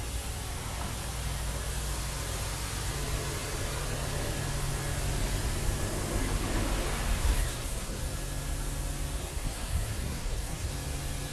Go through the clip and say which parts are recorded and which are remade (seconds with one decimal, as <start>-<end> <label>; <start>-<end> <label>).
0.0-7.2 recorded; 7.2-8.0 remade; 8.0-9.2 recorded; 9.2-10.7 remade; 10.7-11.3 recorded